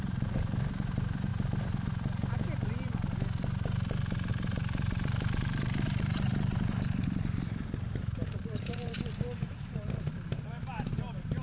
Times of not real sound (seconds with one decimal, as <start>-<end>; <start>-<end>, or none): 0.0-1.3; 4.3-11.4